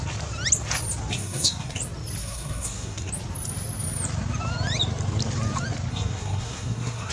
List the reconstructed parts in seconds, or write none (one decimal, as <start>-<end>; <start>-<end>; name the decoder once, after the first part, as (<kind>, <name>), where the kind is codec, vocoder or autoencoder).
1.1-1.8 (codec, SNAC); 2.2-3.1; 5.9-7.1